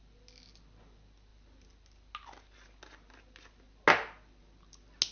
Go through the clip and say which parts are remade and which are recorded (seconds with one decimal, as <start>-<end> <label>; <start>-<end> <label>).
0.0-5.1 recorded